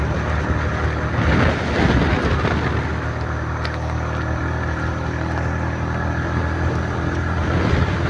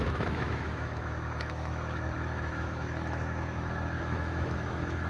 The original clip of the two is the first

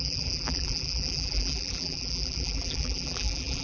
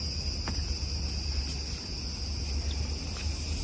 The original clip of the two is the second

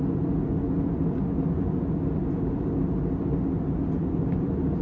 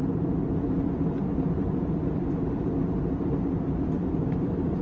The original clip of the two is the first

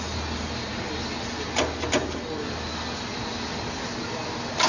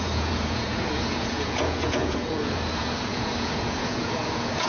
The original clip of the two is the first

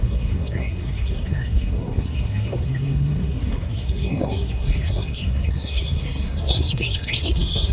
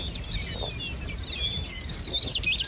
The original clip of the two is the second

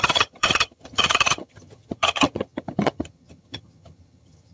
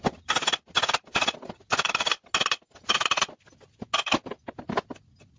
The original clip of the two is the second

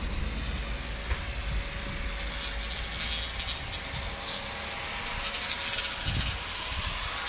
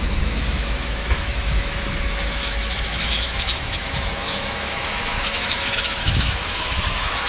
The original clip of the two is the first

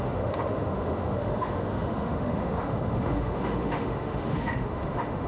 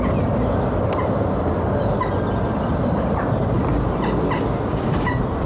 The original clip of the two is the second